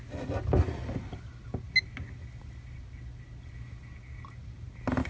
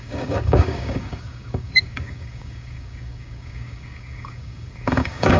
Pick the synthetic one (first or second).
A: second